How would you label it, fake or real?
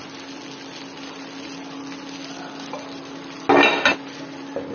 real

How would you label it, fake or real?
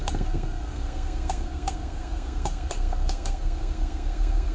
fake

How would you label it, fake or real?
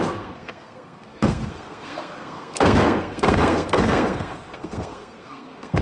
fake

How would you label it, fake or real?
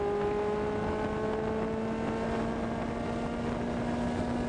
real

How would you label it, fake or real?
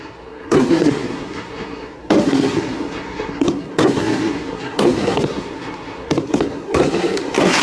fake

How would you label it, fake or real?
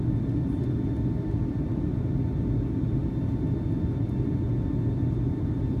real